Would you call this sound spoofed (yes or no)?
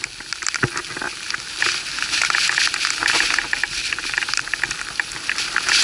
no